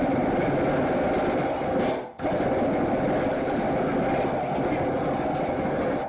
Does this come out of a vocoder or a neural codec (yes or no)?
no